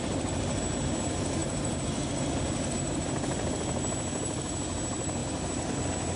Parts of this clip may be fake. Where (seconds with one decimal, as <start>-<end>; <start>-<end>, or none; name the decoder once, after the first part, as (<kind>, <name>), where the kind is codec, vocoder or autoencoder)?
none